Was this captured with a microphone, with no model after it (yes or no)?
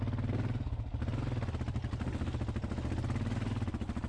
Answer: yes